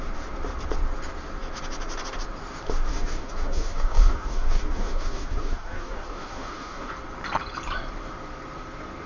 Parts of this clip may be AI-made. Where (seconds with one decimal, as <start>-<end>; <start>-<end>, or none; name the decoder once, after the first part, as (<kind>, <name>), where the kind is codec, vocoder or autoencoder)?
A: 2.9-6.9 (codec, DAC)

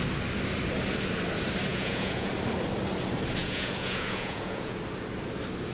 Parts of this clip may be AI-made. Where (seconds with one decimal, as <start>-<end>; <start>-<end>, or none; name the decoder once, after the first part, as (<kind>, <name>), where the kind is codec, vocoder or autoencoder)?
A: 1.7-2.3 (vocoder, Vocos); 3.4-4.8

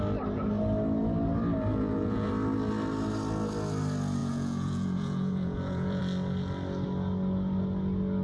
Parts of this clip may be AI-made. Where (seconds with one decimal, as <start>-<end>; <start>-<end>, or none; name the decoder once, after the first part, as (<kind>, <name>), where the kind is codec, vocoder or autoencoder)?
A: 1.7-2.3 (vocoder, Vocos); 4.2-6.0

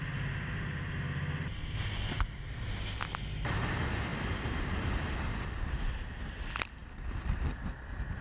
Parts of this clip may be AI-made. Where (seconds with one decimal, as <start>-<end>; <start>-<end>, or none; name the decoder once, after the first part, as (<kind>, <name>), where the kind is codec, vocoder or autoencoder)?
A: none

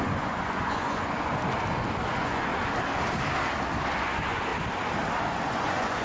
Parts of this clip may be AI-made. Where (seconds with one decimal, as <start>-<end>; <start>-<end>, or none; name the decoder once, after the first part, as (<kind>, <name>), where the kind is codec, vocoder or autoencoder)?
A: 0.0-1.3 (vocoder, Vocos); 2.1-2.5; 4.0-4.5; 5.2-6.0

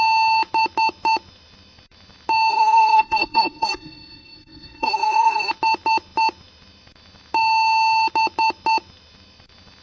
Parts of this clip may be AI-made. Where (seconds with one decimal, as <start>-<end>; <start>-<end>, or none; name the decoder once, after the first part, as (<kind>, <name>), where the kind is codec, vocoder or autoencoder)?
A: 2.5-5.5 (codec, SNAC)

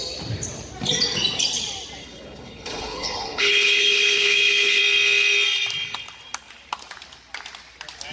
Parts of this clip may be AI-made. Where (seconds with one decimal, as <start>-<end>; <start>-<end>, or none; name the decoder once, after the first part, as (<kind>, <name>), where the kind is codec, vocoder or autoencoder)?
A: 2.0-4.8 (codec, HILCodec)

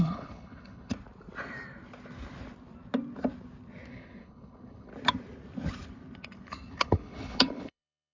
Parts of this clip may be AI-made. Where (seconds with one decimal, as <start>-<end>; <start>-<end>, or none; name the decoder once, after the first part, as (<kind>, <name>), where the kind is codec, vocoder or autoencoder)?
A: 0.0-0.9 (codec, HILCodec); 3.9-4.9; 6.7-8.1